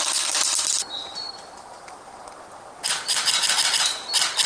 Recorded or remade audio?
recorded